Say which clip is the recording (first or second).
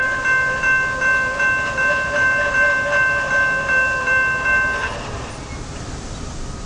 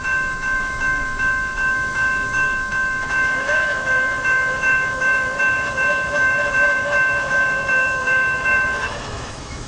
first